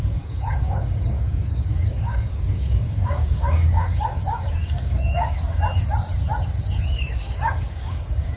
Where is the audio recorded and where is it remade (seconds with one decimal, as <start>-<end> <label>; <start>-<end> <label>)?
0.0-5.4 remade; 5.4-6.9 recorded; 6.9-8.4 remade